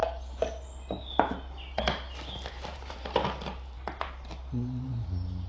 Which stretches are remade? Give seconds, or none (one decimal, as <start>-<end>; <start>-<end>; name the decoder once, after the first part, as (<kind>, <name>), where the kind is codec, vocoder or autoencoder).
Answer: 2.5-5.5 (vocoder, BigVGAN v2)